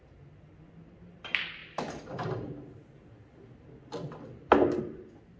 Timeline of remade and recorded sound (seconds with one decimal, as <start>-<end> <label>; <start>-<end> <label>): 0.0-5.4 recorded